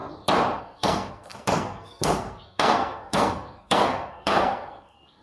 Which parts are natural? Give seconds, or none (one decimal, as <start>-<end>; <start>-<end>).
0.0-0.6